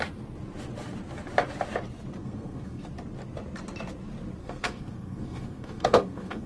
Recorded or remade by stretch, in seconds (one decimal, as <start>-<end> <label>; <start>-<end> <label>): 0.0-2.2 recorded; 2.2-2.9 remade; 2.9-4.4 recorded; 4.4-6.5 remade